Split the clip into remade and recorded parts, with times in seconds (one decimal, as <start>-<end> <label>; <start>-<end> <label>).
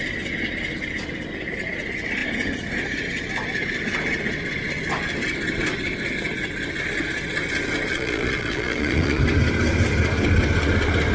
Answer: 0.0-7.9 recorded; 7.9-9.2 remade; 9.2-11.1 recorded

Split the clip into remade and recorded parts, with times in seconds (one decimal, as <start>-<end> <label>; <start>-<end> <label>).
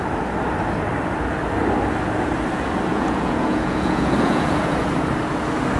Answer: 0.0-2.9 recorded; 2.9-4.9 remade; 4.9-5.8 recorded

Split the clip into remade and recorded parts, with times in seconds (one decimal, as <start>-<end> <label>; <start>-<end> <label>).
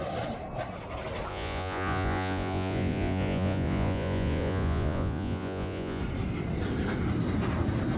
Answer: 0.0-1.3 recorded; 1.3-6.0 remade; 6.0-8.0 recorded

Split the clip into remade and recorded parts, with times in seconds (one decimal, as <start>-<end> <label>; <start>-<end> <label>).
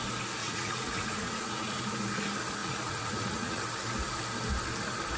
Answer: 0.0-0.4 recorded; 0.4-1.8 remade; 1.8-2.6 recorded; 2.6-3.6 remade; 3.6-5.2 recorded